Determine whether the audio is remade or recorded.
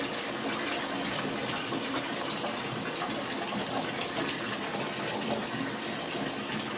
recorded